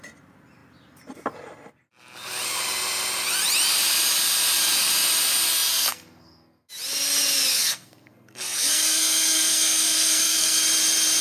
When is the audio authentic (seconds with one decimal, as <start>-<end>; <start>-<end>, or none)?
0.0-5.7; 6.7-7.5; 10.6-11.2